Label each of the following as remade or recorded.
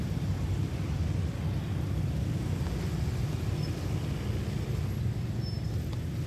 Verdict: recorded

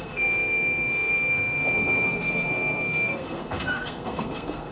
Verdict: remade